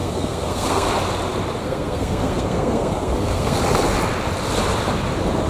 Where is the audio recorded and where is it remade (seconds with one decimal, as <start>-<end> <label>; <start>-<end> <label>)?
0.0-0.9 remade; 0.9-1.6 recorded; 1.6-3.6 remade; 3.6-5.5 recorded